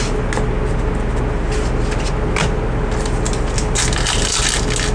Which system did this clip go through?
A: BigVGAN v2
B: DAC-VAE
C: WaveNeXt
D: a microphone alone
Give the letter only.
D